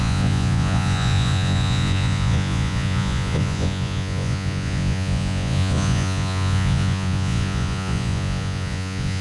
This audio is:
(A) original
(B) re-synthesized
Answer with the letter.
B